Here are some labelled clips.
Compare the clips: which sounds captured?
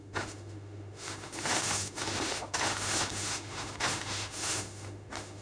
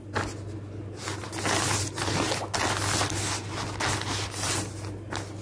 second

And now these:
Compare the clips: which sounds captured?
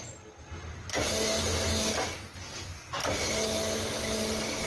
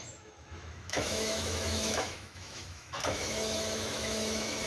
first